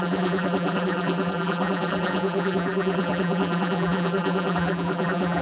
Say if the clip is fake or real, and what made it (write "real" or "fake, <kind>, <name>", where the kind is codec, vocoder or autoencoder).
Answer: fake, vocoder, BigVGAN v2